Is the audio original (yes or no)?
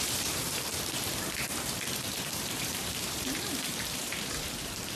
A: no